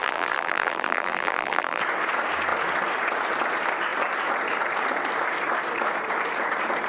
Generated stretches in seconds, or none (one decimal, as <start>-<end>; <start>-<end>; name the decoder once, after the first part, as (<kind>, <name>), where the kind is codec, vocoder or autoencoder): 0.0-1.8 (vocoder, BigVGAN v2)

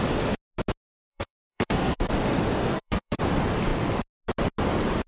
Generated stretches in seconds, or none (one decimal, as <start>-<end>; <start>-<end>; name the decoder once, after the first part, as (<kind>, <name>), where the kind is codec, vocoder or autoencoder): 0.9-2.1 (codec, SNAC); 2.6-3.2

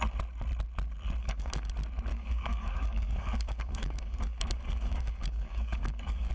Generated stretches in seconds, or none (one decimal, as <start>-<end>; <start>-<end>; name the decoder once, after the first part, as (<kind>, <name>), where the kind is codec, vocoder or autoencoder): 1.2-1.7 (codec, DAC); 2.1-6.3

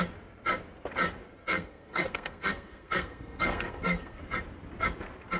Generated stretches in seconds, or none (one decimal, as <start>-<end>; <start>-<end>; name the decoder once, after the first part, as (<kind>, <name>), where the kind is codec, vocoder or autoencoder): 1.5-4.2 (codec, SNAC)

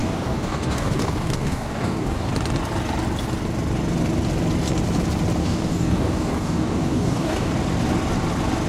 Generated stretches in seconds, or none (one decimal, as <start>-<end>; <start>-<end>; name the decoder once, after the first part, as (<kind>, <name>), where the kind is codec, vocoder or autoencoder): 0.0-2.3 (codec, DAC); 5.4-7.5